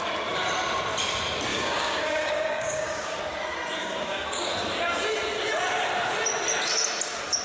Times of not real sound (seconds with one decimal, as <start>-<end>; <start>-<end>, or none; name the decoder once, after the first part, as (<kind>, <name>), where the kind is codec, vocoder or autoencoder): 1.5-3.2 (codec, DAC); 3.8-4.5